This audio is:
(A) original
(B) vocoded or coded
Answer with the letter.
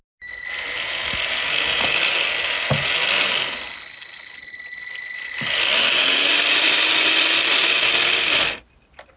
A